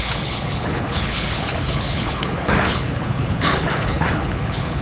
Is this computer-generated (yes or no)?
yes